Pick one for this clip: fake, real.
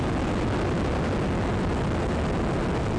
real